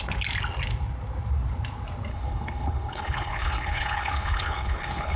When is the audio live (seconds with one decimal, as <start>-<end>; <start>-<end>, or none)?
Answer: 0.0-2.1